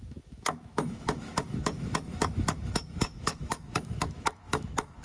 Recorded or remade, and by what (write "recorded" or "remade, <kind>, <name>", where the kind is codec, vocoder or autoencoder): remade, autoencoder, DAC-VAE